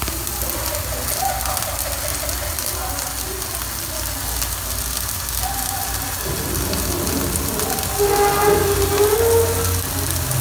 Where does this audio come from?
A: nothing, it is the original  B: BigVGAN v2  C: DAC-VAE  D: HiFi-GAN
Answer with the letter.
A